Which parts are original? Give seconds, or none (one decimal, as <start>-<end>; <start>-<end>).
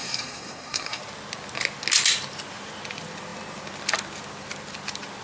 1.0-5.2